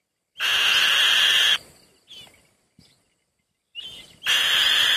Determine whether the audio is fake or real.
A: real